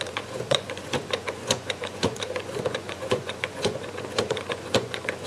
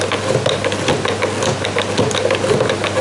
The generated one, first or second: first